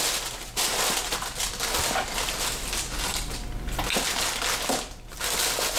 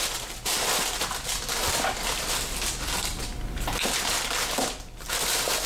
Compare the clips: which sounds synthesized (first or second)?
second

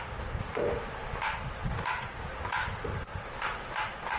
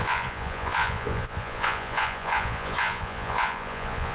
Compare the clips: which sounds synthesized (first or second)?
second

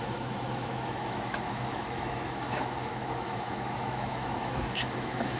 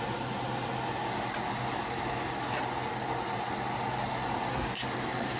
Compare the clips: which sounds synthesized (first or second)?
first